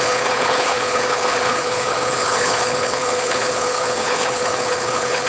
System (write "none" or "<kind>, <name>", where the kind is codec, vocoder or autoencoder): codec, HILCodec